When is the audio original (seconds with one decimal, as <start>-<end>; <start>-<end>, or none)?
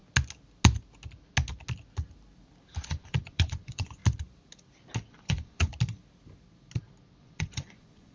0.0-2.8; 4.0-5.1; 5.7-7.2